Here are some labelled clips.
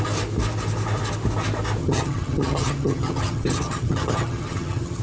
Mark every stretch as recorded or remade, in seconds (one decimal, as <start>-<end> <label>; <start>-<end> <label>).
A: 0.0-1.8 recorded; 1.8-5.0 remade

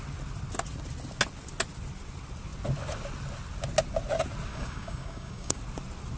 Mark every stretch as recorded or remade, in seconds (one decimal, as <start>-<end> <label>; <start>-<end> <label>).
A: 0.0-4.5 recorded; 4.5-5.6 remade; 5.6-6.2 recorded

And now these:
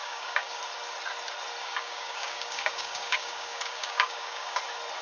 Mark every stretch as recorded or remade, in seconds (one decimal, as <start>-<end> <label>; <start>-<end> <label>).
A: 0.0-0.6 remade; 0.6-1.6 recorded; 1.6-4.6 remade; 4.6-5.0 recorded

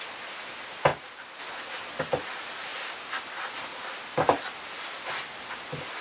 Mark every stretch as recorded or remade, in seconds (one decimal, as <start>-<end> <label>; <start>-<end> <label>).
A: 0.0-6.0 recorded

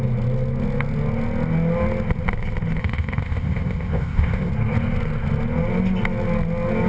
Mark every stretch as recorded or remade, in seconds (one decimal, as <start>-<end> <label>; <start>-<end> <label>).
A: 0.0-2.8 recorded; 2.8-4.5 remade; 4.5-6.9 recorded

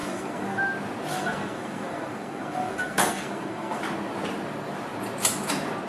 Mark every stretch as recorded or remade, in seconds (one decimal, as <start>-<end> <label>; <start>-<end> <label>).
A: 0.0-0.6 remade; 0.6-1.1 recorded; 1.1-3.8 remade; 3.8-5.9 recorded

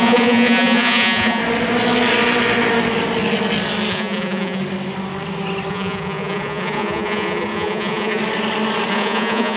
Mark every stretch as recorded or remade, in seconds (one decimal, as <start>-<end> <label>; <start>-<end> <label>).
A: 0.0-1.4 remade; 1.4-3.9 recorded; 3.9-4.6 remade; 4.6-5.7 recorded; 5.7-8.2 remade; 8.2-8.9 recorded; 8.9-9.6 remade